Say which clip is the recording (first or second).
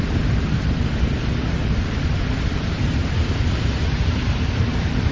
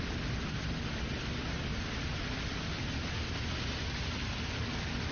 second